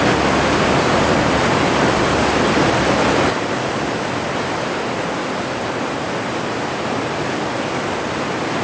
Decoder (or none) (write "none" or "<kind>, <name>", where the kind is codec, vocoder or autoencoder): none